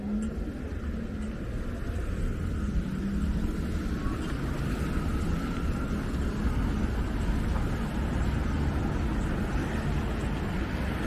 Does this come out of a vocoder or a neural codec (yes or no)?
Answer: no